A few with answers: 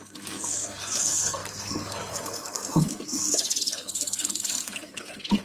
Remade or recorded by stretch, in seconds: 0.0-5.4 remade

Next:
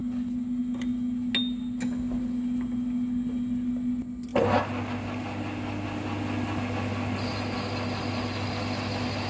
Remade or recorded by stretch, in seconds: 0.0-9.3 recorded

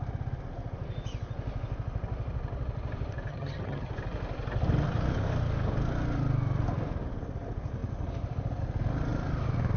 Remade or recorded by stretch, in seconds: 0.0-3.3 recorded; 3.3-3.9 remade; 3.9-9.8 recorded

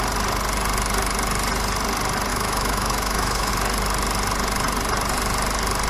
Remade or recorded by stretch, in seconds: 0.0-2.3 recorded; 2.3-3.5 remade; 3.5-5.9 recorded

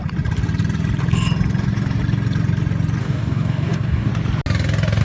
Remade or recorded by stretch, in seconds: 0.0-3.0 recorded; 3.0-4.1 remade; 4.1-5.0 recorded

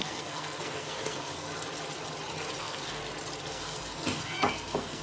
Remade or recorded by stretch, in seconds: 0.0-1.5 remade; 1.5-2.6 recorded; 2.6-3.0 remade; 3.0-3.5 recorded; 3.5-5.0 remade